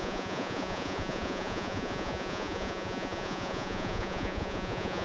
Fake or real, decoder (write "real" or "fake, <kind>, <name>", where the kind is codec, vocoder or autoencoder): fake, vocoder, Vocos